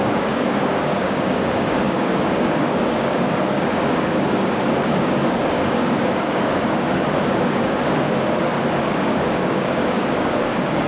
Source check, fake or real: fake